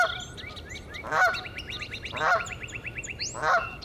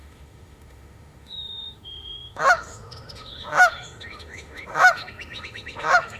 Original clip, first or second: first